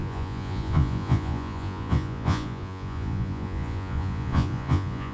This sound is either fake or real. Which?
fake